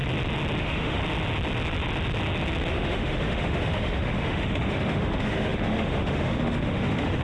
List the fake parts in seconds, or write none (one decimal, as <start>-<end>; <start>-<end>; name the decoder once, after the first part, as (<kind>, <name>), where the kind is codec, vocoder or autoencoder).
0.6-1.0 (autoencoder, DAC-VAE); 2.7-7.2